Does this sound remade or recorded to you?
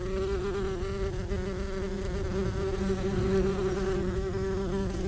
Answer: recorded